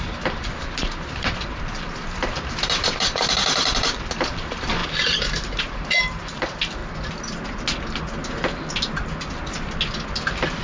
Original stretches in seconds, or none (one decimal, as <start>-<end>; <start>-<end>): 6.8-10.6